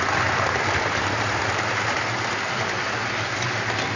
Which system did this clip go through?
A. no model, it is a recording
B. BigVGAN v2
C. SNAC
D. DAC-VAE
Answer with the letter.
A